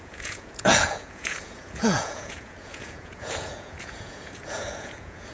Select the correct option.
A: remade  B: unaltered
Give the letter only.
A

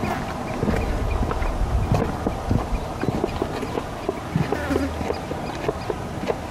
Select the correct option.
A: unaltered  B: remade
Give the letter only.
A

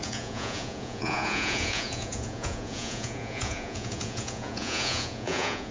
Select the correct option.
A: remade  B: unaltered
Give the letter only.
A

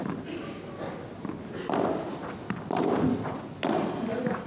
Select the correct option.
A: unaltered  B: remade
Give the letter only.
A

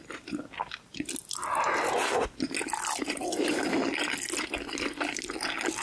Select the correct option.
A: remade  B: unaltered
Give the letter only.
B